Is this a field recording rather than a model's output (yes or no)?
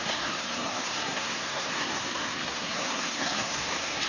no